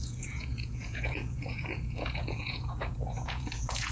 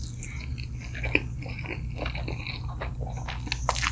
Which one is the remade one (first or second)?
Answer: first